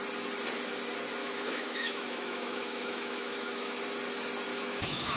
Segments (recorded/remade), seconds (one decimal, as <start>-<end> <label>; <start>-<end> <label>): 0.0-1.2 recorded; 1.2-3.8 remade; 3.8-4.5 recorded; 4.5-5.2 remade